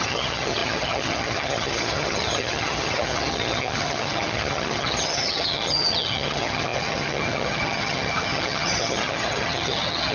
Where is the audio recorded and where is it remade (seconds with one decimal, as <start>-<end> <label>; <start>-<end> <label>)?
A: 0.0-10.1 remade